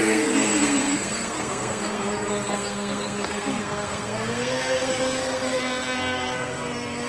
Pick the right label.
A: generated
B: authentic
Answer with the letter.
A